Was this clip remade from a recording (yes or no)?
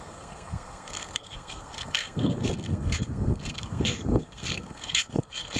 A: yes